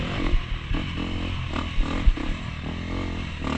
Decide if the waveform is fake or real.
real